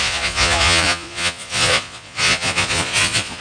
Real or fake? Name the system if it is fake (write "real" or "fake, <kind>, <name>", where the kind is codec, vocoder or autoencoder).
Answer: fake, vocoder, Vocos